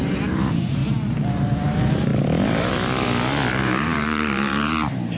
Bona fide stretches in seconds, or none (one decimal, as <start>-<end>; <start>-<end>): 0.8-1.3; 2.1-3.5